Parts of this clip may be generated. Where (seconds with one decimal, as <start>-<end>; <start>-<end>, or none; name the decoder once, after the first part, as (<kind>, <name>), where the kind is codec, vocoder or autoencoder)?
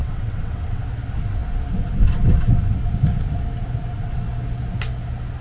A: 0.0-0.8 (vocoder, WaveNeXt)